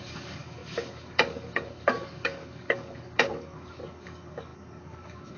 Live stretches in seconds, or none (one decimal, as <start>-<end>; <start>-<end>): none